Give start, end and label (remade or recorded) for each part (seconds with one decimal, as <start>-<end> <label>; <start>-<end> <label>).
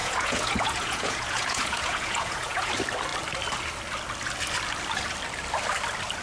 0.0-2.7 remade; 2.7-6.2 recorded